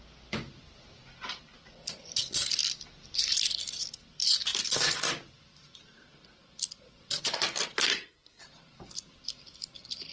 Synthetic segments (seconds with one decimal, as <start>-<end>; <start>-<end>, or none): 7.9-8.4